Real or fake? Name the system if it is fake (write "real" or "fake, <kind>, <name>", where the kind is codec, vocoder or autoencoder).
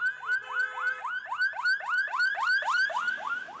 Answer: real